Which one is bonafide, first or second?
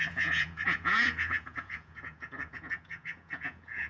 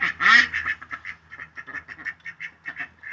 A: second